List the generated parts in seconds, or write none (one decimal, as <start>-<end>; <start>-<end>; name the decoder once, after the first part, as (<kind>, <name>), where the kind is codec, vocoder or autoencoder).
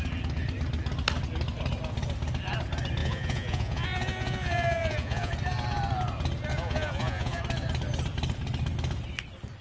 3.0-5.3 (vocoder, Vocos); 6.5-7.4